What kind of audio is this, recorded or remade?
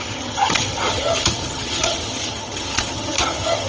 remade